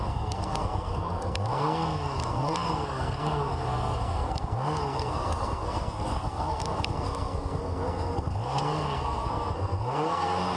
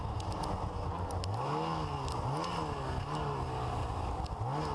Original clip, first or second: second